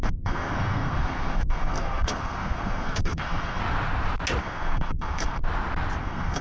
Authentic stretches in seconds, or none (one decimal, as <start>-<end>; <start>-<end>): 3.6-4.4; 5.4-6.0